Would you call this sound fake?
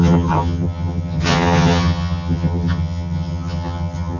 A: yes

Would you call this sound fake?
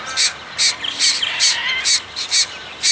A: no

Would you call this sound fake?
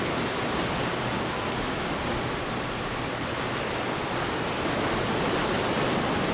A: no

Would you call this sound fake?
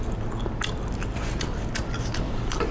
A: no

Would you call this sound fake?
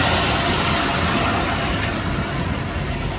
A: no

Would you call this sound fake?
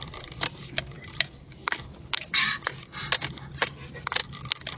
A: no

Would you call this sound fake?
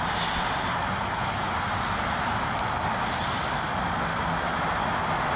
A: no